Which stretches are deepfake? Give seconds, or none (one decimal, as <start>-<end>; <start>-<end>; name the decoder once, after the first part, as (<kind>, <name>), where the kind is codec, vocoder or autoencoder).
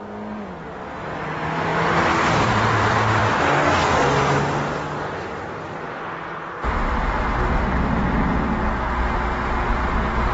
none